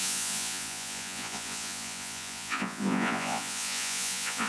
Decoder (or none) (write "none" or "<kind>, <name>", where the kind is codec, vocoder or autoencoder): vocoder, Vocos